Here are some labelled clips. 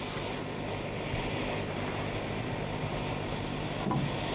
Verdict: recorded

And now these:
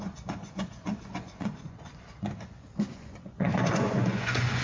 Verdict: remade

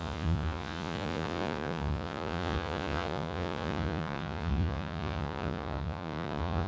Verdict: remade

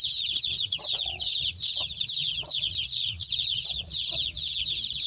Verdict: remade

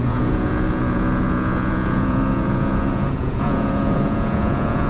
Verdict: remade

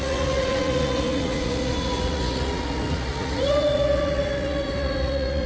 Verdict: remade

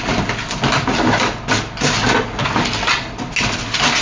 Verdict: recorded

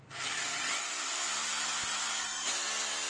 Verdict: recorded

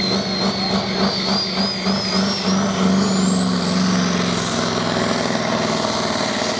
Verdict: recorded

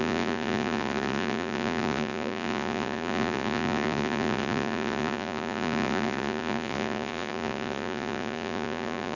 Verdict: remade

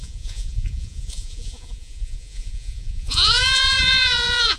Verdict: remade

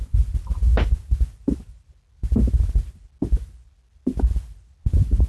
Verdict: recorded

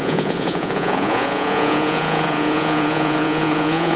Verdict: remade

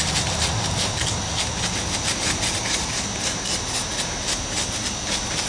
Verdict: recorded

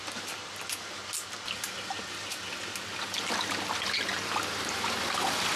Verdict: recorded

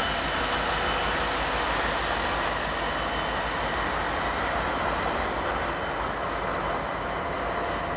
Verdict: recorded